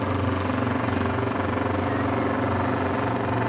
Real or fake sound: real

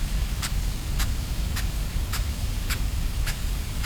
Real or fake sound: fake